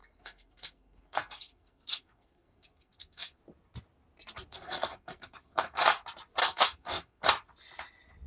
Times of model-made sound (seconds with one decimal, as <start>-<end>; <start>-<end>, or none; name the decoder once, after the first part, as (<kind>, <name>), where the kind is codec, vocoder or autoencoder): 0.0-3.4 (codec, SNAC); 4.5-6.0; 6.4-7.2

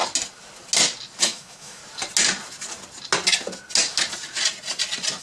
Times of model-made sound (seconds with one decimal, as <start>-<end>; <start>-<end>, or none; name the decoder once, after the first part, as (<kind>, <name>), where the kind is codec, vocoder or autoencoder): 1.2-1.8 (autoencoder, DAC-VAE)

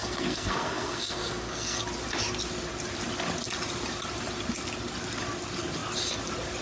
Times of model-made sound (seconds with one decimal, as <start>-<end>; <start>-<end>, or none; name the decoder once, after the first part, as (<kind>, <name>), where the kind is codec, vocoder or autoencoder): 0.0-1.8 (codec, SNAC)

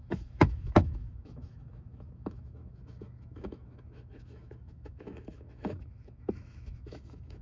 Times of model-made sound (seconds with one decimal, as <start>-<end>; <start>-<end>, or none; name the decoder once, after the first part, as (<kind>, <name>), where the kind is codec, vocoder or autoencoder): 0.0-7.4 (autoencoder, DAC-VAE)

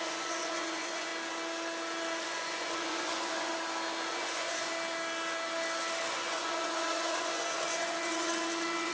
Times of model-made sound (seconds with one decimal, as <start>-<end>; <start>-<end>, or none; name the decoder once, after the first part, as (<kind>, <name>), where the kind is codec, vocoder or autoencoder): 0.0-1.1 (vocoder, Vocos); 2.2-3.5; 4.1-4.7; 6.1-8.9

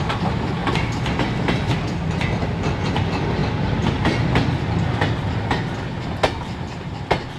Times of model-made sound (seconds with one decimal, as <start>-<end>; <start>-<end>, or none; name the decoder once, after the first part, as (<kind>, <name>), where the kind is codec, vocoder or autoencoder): none

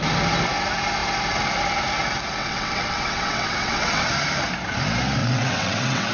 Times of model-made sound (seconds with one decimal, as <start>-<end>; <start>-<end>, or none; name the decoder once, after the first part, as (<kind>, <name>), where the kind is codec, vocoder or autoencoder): 2.4-4.1 (vocoder, WaveNeXt); 5.2-6.1